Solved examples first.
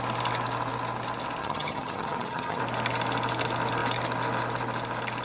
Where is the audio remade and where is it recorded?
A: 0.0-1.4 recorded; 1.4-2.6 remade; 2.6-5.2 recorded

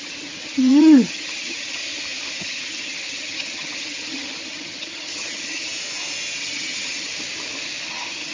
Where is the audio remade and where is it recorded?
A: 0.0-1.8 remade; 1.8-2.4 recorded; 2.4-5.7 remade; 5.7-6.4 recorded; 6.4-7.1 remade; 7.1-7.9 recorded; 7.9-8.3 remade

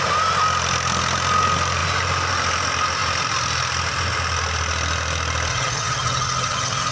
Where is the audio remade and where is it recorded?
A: 0.0-5.5 recorded; 5.5-6.9 remade

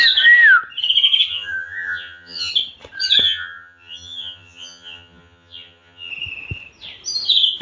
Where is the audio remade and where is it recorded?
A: 0.0-1.3 recorded; 1.3-2.5 remade; 2.5-3.2 recorded; 3.2-6.1 remade; 6.1-7.6 recorded

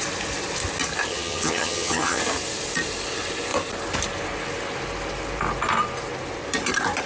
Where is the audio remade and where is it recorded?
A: 0.0-1.1 recorded; 1.1-2.2 remade; 2.2-7.1 recorded

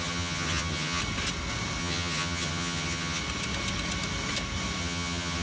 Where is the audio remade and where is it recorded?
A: 0.0-1.0 remade; 1.0-1.8 recorded; 1.8-3.2 remade; 3.2-4.8 recorded; 4.8-5.4 remade